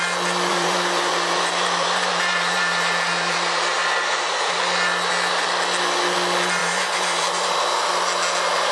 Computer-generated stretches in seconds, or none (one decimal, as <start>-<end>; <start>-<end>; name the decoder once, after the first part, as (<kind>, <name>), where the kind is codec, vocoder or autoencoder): 0.5-4.6 (vocoder, BigVGAN v2); 6.6-7.5